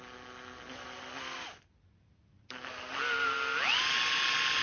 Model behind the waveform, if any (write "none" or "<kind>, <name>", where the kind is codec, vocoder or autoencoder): none